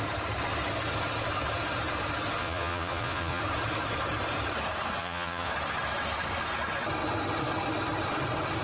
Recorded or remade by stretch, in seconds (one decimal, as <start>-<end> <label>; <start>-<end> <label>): 0.0-2.4 recorded; 2.4-3.4 remade; 3.4-5.0 recorded; 5.0-5.5 remade; 5.5-8.6 recorded